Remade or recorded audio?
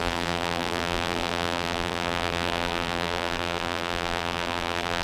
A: remade